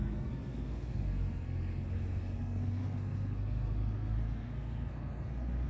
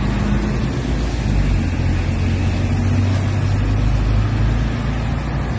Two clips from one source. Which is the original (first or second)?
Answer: second